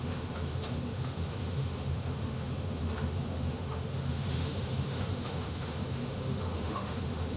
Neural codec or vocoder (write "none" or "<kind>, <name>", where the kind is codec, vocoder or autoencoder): autoencoder, DAC-VAE